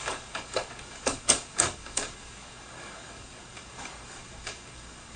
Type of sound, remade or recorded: remade